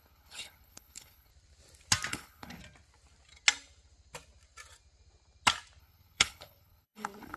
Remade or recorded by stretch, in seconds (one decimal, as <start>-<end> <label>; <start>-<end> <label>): 0.0-1.3 remade; 1.3-2.1 recorded; 2.1-2.6 remade; 2.6-5.8 recorded; 5.8-7.4 remade